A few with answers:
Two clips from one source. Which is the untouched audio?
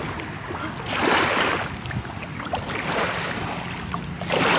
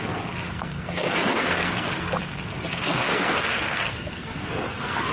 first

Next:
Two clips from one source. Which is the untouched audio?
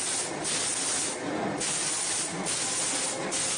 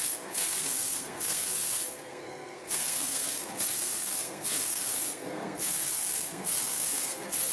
first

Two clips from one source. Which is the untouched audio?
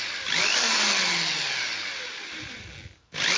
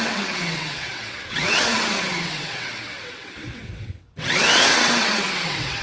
first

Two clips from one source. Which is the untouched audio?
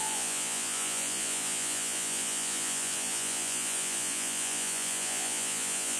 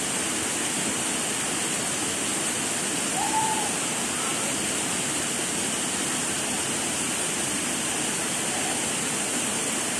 second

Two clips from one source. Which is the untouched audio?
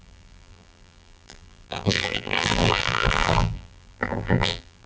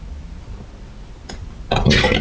second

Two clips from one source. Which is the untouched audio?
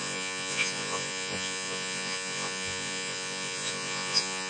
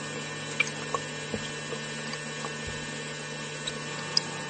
second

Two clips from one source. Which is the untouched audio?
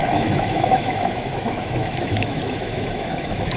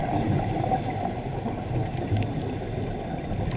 second